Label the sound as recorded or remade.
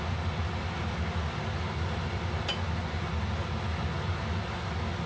recorded